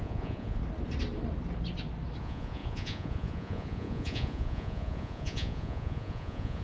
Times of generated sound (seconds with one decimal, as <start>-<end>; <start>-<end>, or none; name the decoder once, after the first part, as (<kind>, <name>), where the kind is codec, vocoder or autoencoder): 0.0-0.6 (vocoder, Vocos); 2.2-6.6